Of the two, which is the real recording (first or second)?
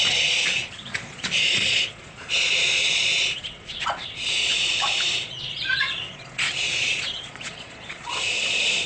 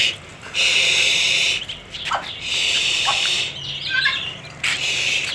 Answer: second